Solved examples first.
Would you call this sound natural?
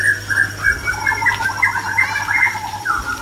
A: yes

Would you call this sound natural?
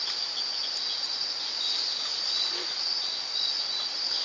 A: yes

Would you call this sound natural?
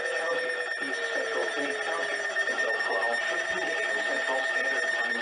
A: yes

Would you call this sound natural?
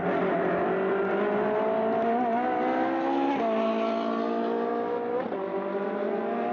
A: yes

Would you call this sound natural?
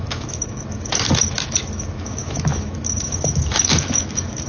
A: no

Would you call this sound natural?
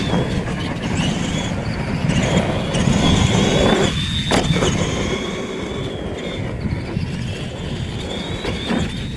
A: yes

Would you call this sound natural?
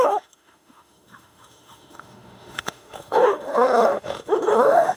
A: no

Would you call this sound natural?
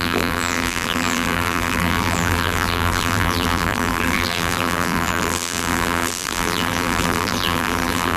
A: no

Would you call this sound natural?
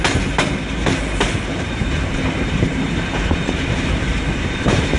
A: no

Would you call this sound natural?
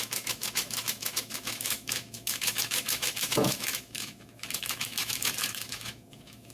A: no